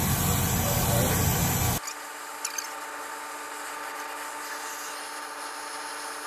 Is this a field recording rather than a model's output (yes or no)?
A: yes